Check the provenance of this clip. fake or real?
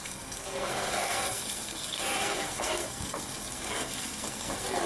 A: fake